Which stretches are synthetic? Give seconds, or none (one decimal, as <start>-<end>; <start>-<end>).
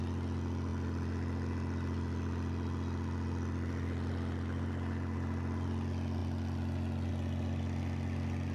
none